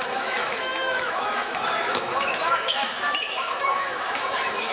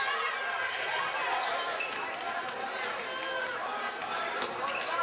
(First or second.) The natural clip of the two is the second